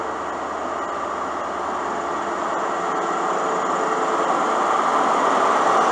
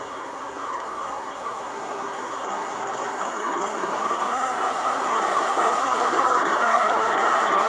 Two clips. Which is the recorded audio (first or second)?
first